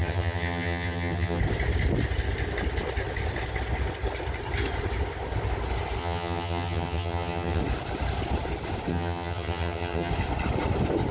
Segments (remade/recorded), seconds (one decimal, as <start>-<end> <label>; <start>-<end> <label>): 0.0-1.4 remade; 1.4-6.0 recorded; 6.0-7.6 remade; 7.6-8.9 recorded; 8.9-10.1 remade; 10.1-11.1 recorded